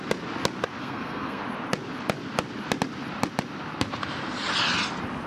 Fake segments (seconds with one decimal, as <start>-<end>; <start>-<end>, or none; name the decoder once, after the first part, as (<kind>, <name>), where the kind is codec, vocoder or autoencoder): 0.8-1.4 (codec, SNAC)